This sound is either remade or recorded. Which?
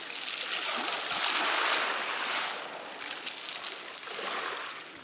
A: recorded